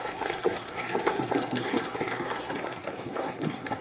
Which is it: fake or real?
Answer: fake